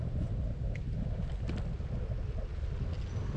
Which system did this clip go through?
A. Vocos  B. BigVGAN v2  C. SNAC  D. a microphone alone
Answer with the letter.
D